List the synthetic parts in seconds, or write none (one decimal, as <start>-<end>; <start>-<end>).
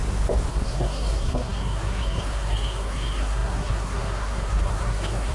0.5-5.3